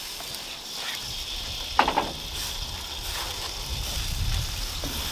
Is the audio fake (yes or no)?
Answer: no